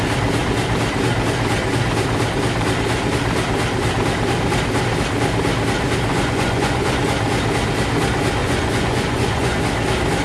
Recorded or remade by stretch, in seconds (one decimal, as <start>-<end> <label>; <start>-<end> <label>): 0.0-6.1 recorded; 6.1-7.0 remade; 7.0-8.4 recorded; 8.4-9.6 remade; 9.6-10.2 recorded